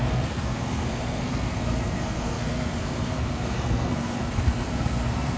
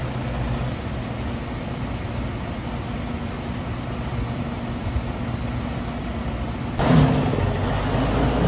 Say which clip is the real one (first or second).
second